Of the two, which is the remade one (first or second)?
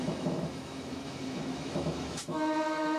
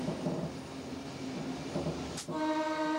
first